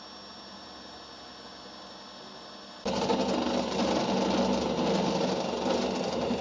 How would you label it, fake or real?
real